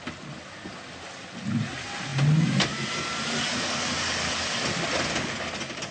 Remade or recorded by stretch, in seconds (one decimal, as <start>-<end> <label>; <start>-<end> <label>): 0.0-5.9 recorded